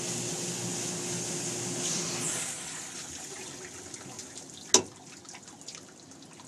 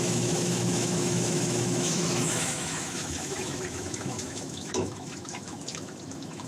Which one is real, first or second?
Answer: first